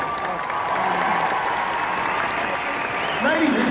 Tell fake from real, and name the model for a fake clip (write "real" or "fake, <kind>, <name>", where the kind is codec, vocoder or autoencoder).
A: real